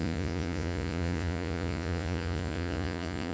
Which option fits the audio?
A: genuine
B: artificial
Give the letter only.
B